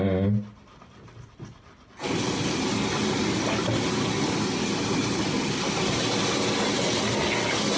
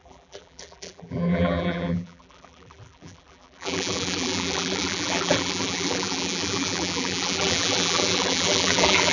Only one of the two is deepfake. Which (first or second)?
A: second